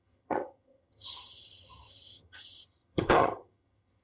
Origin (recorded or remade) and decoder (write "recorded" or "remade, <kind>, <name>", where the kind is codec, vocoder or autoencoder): remade, vocoder, HiFi-GAN